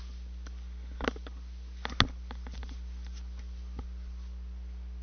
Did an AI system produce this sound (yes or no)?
no